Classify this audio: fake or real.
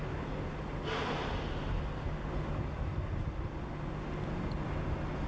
real